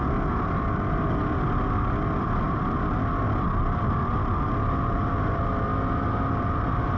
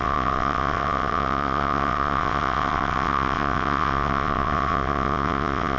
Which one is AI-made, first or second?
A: second